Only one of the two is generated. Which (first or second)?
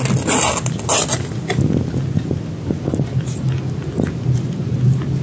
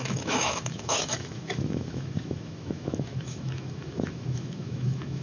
second